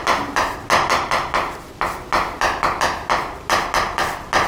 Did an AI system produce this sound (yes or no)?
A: no